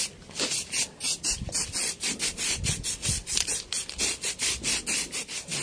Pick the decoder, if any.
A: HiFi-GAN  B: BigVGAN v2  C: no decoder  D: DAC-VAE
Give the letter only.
C